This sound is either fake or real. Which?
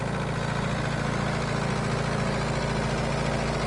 real